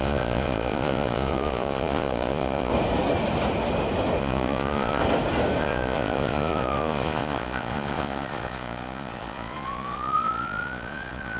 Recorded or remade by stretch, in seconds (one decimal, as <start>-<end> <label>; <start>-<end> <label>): 0.0-2.7 remade; 2.7-4.2 recorded; 4.2-5.0 remade; 5.0-5.6 recorded; 5.6-11.4 remade